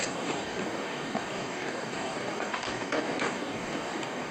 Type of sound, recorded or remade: remade